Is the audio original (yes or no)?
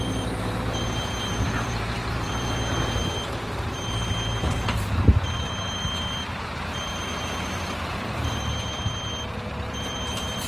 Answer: no